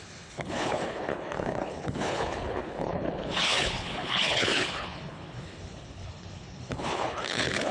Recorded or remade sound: remade